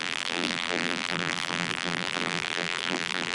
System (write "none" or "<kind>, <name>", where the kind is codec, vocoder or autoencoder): vocoder, BigVGAN v2